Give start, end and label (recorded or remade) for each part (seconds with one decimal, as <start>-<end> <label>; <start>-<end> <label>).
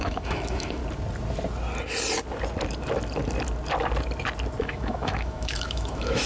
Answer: 0.0-0.8 remade; 0.8-4.6 recorded; 4.6-6.3 remade